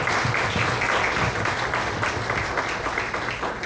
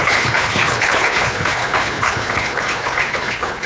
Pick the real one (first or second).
first